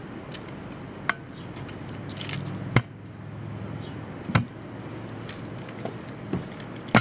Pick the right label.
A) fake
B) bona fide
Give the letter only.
B